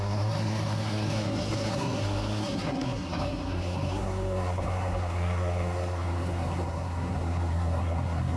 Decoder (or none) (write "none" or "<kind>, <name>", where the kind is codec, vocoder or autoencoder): codec, SNAC